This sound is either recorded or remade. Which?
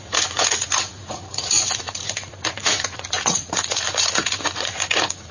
remade